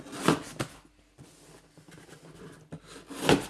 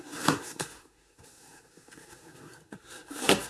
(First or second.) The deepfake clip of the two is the second